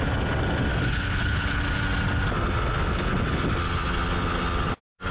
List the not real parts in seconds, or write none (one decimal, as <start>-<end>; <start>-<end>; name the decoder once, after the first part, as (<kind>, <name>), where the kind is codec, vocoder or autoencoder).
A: 0.7-1.6 (codec, HILCodec)